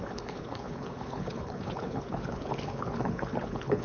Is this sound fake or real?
fake